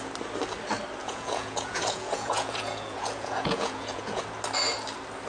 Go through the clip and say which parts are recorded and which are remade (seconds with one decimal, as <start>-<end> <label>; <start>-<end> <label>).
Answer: 0.0-1.0 recorded; 1.0-4.2 remade; 4.2-5.3 recorded